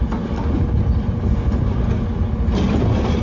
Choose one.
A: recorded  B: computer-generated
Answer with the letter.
A